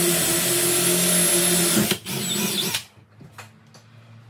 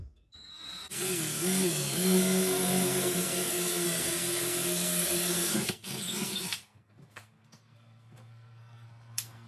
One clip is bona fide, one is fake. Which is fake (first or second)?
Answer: second